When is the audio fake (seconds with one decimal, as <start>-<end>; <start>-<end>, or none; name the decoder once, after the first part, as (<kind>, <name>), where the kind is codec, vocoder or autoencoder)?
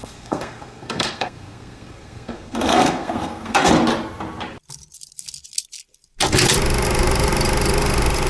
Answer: 0.0-3.7 (codec, SNAC)